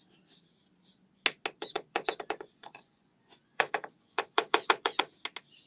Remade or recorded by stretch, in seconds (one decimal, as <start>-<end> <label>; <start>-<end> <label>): 0.0-1.6 recorded; 1.6-5.0 remade; 5.0-5.7 recorded